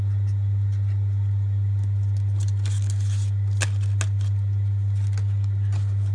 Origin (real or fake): real